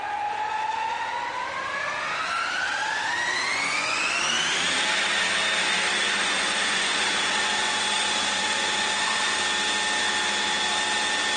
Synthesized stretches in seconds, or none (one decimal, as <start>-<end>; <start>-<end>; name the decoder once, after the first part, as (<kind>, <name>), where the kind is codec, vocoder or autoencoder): 3.5-4.2 (vocoder, Vocos); 6.0-9.4